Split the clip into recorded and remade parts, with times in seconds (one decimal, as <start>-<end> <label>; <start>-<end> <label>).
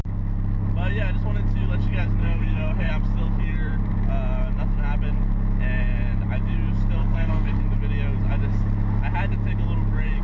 0.0-2.2 recorded; 2.2-2.9 remade; 2.9-7.0 recorded; 7.0-7.6 remade; 7.6-10.2 recorded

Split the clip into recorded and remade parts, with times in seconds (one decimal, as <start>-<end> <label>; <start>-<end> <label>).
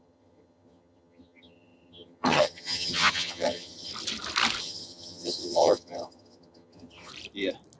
0.0-3.9 remade; 3.9-4.6 recorded; 4.6-7.1 remade; 7.1-7.8 recorded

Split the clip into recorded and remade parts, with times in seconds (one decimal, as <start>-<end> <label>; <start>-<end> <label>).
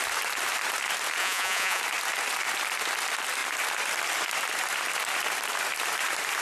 0.0-1.2 recorded; 1.2-1.8 remade; 1.8-6.4 recorded